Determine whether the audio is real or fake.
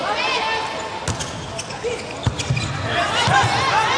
real